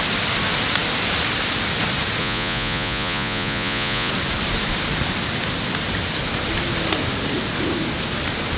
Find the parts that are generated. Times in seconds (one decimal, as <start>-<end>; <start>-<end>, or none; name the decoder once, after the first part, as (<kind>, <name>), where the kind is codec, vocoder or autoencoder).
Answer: 2.2-4.1 (vocoder, Vocos)